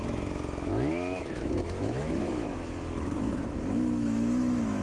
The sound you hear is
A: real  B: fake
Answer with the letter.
B